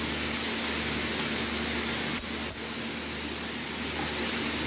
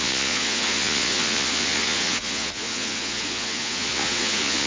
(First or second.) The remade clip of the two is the second